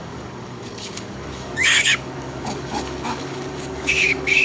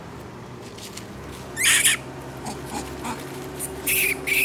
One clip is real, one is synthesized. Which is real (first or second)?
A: second